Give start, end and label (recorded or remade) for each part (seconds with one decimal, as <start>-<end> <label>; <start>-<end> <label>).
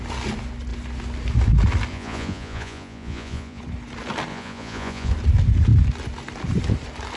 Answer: 0.0-1.9 recorded; 1.9-3.6 remade; 3.6-4.3 recorded; 4.3-5.1 remade; 5.1-7.2 recorded